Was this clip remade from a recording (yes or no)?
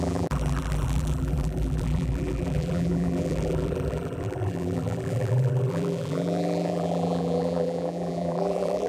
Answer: yes